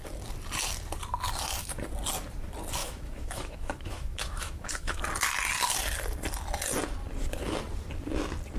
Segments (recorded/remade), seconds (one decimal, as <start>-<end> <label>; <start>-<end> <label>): 0.0-2.8 recorded; 2.8-5.0 remade; 5.0-8.6 recorded